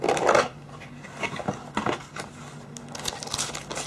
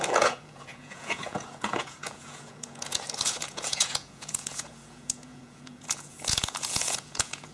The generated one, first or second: second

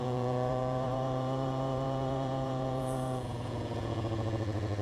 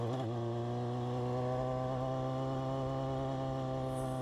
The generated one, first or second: first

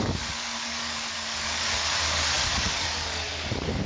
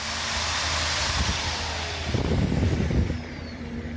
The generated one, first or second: first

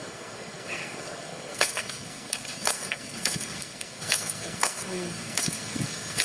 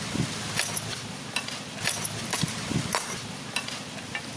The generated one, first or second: first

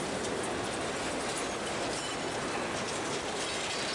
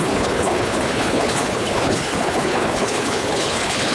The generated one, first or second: second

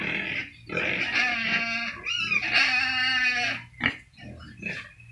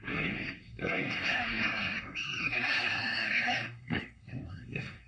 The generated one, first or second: second